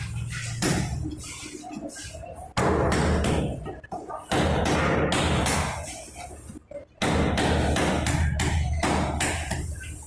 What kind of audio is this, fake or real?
real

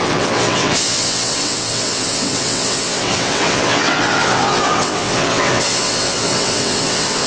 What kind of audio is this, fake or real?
fake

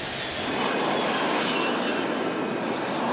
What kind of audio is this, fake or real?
real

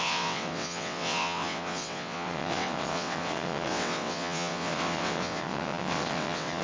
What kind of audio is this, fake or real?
fake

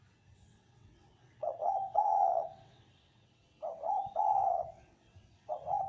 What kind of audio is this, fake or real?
fake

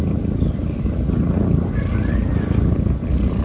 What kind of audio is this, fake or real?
real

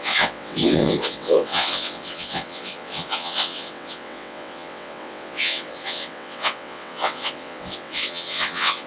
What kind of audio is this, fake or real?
fake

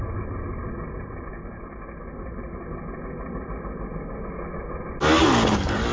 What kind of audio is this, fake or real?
real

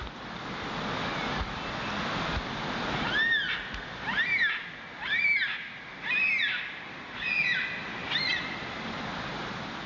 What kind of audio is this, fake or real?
real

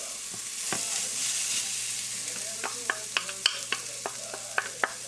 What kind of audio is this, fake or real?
real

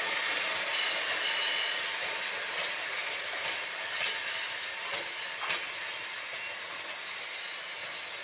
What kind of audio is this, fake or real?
real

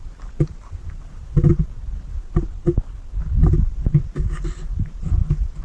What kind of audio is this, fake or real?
real